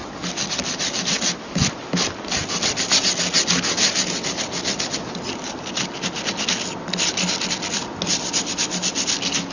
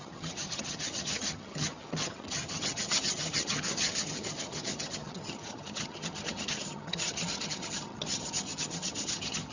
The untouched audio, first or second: first